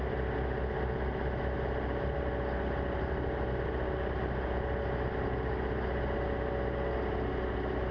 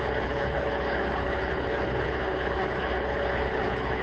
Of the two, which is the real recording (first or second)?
first